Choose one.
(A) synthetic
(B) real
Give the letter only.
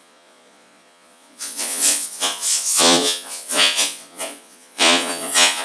A